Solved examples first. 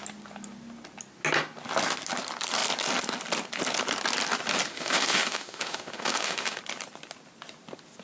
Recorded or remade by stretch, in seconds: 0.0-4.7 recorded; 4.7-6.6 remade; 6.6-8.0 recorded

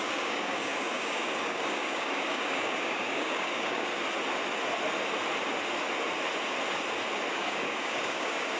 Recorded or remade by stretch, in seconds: 0.0-3.9 remade; 3.9-7.3 recorded; 7.3-8.6 remade

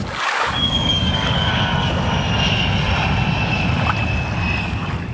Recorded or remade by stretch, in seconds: 0.0-1.5 remade; 1.5-4.6 recorded; 4.6-5.1 remade

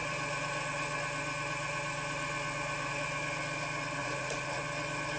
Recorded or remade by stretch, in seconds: 0.0-4.0 recorded; 4.0-4.6 remade; 4.6-5.2 recorded